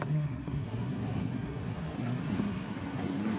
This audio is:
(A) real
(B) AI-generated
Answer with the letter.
B